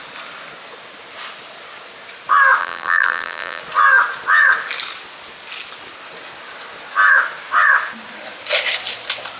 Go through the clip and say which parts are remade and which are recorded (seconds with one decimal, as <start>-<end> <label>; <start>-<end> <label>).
0.0-2.6 recorded; 2.6-3.6 remade; 3.6-9.4 recorded